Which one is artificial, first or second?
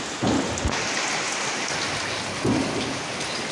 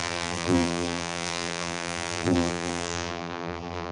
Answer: second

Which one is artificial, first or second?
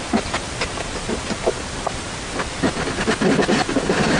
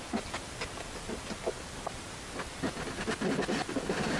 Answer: first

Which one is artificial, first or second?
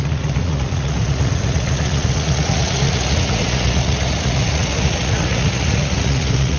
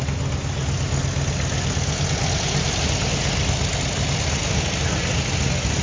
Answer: first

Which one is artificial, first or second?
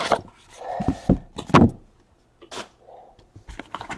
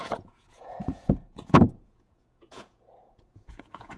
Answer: second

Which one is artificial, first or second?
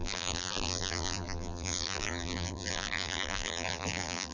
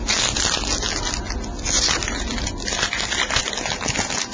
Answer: first